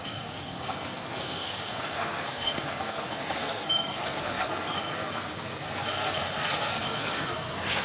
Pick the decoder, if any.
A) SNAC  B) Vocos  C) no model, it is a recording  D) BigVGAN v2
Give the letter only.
A